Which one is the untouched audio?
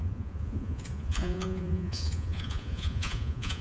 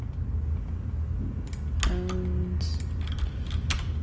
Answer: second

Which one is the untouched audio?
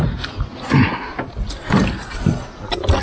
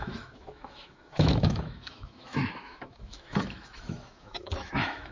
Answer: first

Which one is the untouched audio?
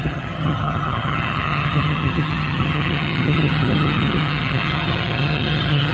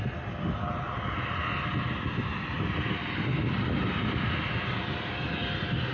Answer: second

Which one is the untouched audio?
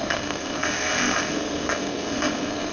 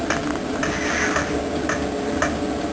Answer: second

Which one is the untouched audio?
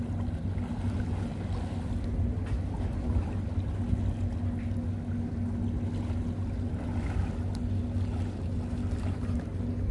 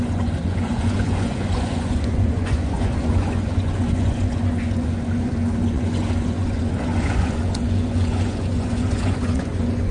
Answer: first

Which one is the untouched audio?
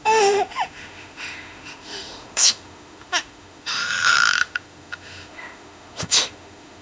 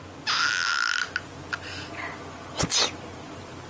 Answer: second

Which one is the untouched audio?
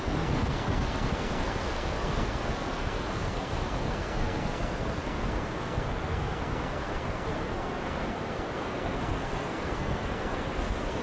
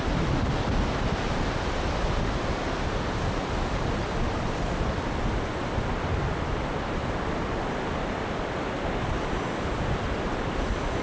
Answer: second